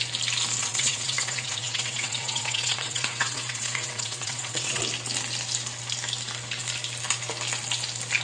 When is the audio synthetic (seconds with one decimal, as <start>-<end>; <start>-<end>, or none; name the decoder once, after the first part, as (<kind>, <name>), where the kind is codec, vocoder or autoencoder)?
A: 0.6-4.8 (vocoder, WaveNeXt)